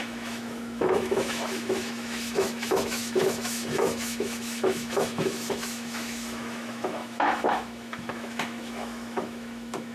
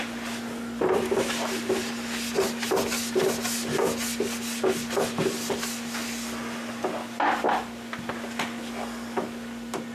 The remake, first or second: first